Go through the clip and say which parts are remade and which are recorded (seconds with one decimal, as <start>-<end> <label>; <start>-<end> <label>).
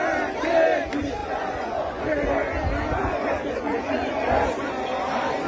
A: 0.0-1.2 recorded; 1.2-2.0 remade; 2.0-3.0 recorded; 3.0-4.3 remade; 4.3-5.5 recorded